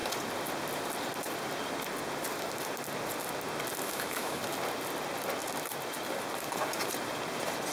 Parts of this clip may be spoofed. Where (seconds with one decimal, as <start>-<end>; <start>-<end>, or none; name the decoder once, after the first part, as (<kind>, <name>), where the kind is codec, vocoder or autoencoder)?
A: 3.8-4.4 (autoencoder, DAC-VAE)